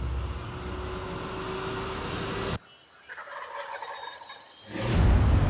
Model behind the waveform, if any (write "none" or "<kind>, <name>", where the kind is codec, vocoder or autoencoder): none